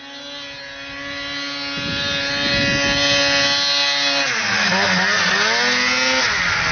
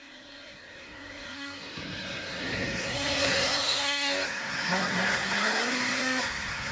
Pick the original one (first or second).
first